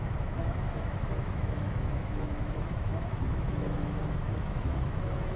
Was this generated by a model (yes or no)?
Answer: yes